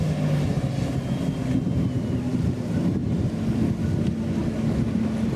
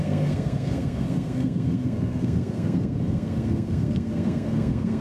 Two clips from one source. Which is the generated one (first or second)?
second